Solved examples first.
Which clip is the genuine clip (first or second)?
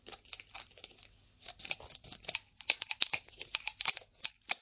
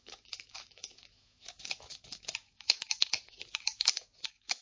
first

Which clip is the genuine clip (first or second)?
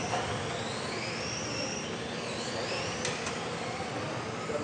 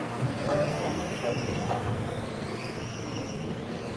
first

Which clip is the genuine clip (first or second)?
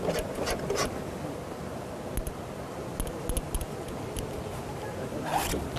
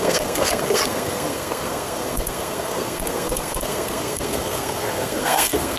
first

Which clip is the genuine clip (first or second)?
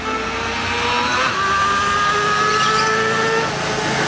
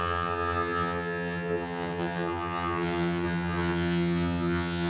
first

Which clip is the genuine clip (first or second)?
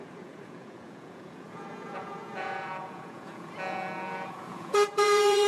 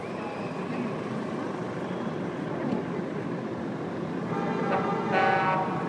second